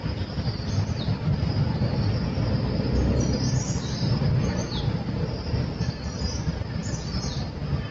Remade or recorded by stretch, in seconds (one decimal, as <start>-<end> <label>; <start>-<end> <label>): 0.0-7.9 recorded